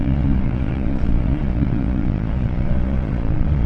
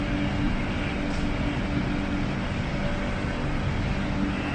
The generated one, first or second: first